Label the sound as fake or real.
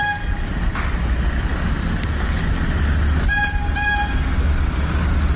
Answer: real